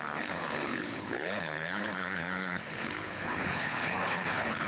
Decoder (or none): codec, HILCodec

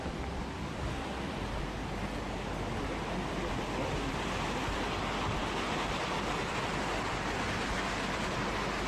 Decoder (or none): none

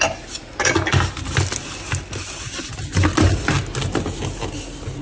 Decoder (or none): none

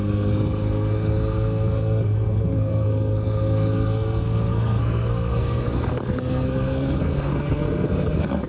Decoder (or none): codec, SNAC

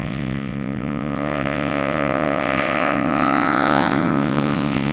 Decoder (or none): vocoder, WaveNeXt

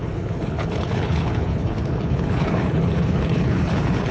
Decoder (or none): codec, HILCodec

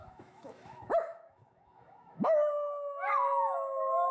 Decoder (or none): autoencoder, DAC-VAE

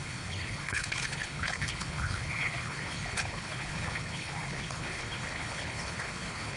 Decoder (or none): codec, HILCodec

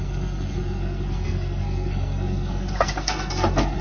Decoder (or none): codec, SNAC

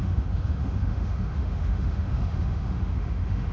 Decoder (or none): autoencoder, DAC-VAE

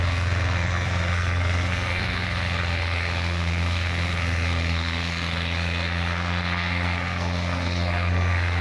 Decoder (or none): codec, SNAC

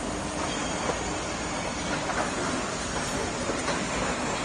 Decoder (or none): none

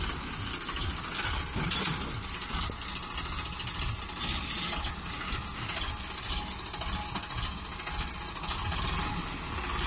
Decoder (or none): none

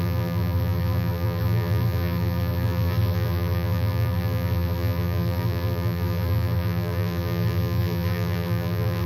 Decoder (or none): vocoder, BigVGAN v2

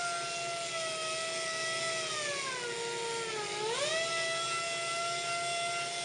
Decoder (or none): none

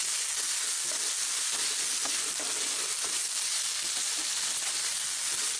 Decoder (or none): none